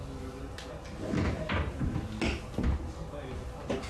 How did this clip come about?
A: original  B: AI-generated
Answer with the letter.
A